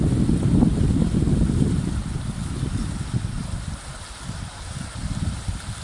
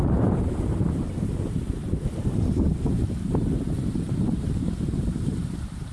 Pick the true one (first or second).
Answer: first